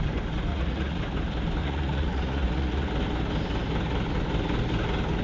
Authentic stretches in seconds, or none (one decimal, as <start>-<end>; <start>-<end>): 0.0-0.5; 1.0-1.6; 2.9-5.2